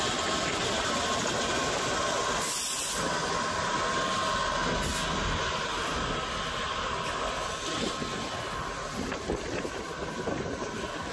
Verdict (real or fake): real